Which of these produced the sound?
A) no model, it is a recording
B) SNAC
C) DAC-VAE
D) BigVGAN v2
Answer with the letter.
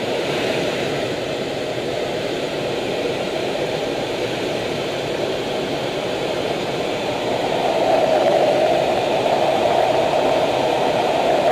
D